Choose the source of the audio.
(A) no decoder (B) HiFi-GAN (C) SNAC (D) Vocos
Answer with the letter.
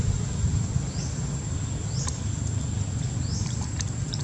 A